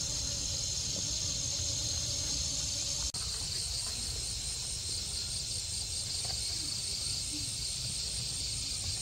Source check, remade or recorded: recorded